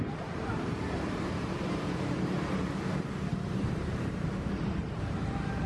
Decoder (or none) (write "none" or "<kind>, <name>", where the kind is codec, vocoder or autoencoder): vocoder, BigVGAN v2